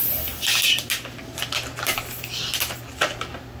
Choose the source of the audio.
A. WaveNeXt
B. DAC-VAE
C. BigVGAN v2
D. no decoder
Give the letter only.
D